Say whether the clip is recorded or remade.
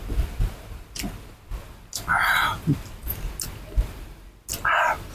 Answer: recorded